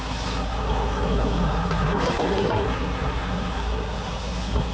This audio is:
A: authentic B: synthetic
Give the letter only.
B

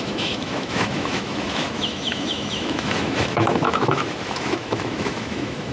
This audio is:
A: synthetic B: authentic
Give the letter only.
A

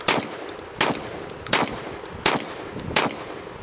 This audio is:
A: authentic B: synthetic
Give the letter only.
A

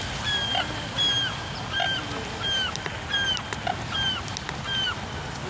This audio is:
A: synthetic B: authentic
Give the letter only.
B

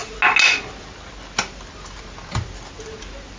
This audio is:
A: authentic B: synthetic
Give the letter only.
A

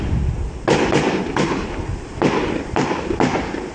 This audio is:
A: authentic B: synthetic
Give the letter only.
A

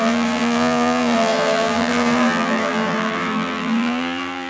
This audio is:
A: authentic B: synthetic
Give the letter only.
B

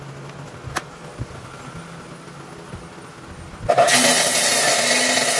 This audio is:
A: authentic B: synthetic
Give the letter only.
A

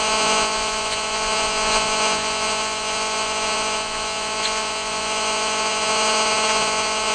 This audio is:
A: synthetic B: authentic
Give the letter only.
A